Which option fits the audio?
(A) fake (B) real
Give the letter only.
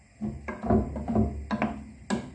B